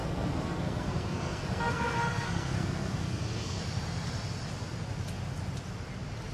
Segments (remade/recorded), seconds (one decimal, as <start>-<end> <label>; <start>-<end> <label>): 0.0-3.6 remade; 3.6-6.3 recorded